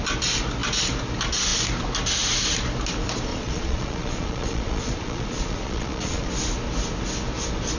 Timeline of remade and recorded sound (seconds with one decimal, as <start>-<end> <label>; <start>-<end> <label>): 0.0-3.3 recorded; 3.3-6.3 remade; 6.3-7.8 recorded